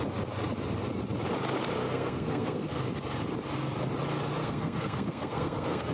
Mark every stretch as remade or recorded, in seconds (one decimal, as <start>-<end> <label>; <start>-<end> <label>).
0.0-1.8 recorded; 1.8-2.8 remade; 2.8-4.4 recorded; 4.4-5.9 remade